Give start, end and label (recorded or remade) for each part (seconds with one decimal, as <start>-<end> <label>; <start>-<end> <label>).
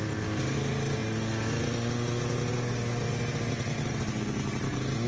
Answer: 0.0-5.1 recorded